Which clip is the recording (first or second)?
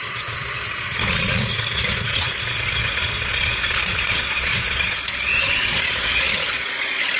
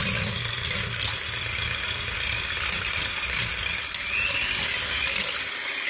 second